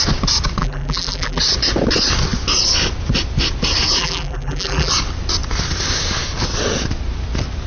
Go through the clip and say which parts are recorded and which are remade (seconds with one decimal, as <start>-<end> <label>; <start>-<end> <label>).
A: 0.0-0.6 recorded; 0.6-1.4 remade; 1.4-4.0 recorded; 4.0-4.9 remade; 4.9-7.7 recorded

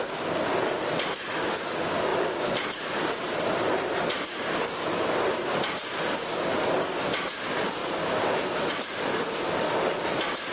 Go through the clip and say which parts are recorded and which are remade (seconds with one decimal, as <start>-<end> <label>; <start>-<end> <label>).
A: 0.0-2.1 recorded; 2.1-6.1 remade; 6.1-7.8 recorded; 7.8-8.7 remade; 8.7-10.5 recorded

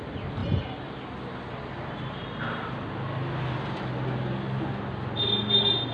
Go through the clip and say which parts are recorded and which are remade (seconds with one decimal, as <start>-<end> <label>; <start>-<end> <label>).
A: 0.0-5.9 recorded

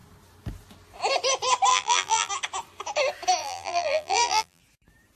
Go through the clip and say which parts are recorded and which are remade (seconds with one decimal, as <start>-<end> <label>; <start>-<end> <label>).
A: 0.0-1.7 recorded; 1.7-2.3 remade; 2.3-3.4 recorded; 3.4-4.6 remade; 4.6-5.2 recorded

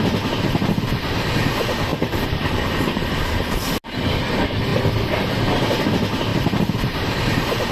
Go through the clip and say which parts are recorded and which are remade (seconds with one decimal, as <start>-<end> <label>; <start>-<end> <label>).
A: 0.0-1.9 recorded; 1.9-3.7 remade; 3.7-6.3 recorded; 6.3-7.7 remade

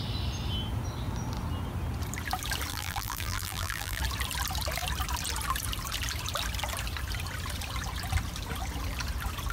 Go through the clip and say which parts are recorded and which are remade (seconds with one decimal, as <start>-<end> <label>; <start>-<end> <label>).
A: 0.0-2.7 recorded; 2.7-4.0 remade; 4.0-9.5 recorded